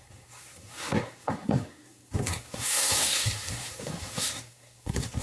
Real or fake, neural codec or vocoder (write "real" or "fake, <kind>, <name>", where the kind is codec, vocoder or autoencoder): fake, codec, SNAC